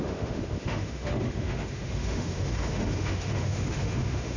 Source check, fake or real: fake